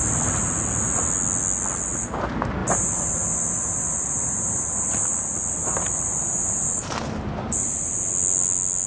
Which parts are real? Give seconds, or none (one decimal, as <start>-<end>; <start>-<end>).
1.1-2.6; 6.9-8.9